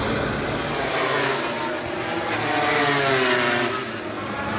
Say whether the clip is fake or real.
real